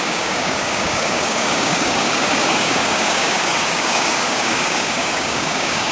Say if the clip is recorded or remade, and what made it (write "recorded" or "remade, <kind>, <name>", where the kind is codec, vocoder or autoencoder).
remade, codec, DAC